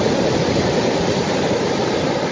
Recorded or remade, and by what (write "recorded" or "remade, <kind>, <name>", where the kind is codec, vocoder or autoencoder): recorded